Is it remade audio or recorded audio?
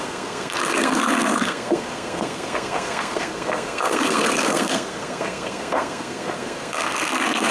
remade